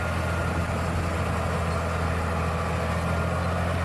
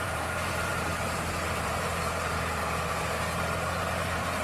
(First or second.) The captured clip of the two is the first